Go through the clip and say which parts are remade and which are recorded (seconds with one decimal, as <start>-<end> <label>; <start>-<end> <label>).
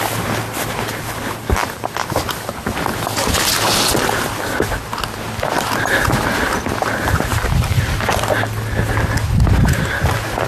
0.0-10.5 recorded